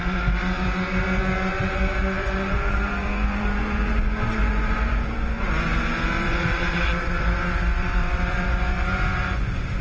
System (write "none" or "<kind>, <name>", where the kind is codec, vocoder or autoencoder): vocoder, Vocos